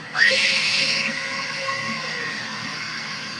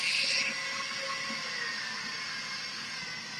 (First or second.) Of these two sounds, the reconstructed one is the first